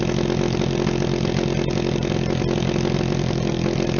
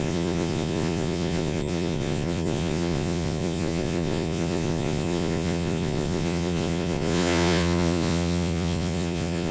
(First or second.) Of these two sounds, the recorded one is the first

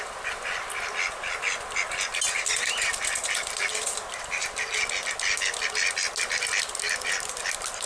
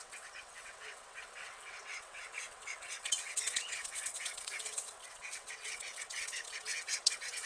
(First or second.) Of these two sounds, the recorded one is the first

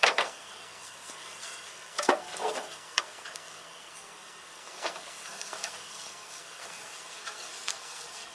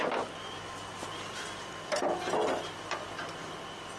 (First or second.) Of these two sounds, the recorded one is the second